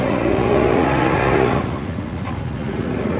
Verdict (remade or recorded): remade